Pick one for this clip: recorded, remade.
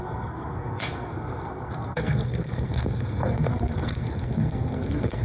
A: remade